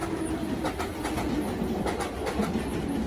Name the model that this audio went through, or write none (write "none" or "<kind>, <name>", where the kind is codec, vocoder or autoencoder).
none